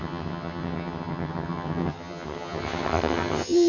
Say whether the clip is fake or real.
fake